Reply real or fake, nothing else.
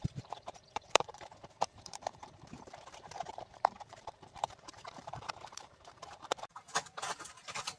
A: fake